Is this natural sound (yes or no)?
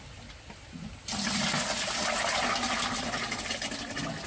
yes